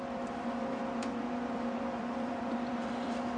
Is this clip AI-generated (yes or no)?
yes